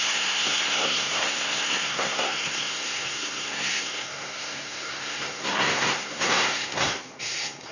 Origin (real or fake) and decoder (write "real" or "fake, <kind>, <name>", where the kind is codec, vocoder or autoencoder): fake, codec, SNAC